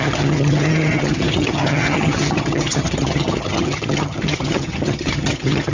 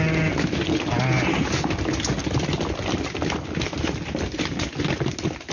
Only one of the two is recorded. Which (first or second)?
second